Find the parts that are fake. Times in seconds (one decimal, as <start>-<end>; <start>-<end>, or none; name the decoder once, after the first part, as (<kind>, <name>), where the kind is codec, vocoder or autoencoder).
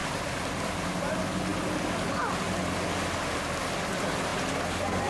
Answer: none